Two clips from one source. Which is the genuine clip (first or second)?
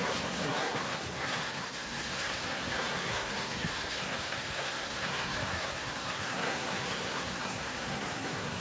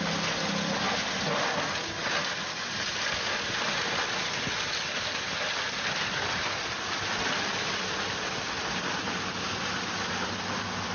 second